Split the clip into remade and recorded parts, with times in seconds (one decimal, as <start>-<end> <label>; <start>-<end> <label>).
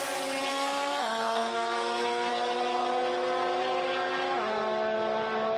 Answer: 0.0-0.5 recorded; 0.5-2.3 remade; 2.3-5.6 recorded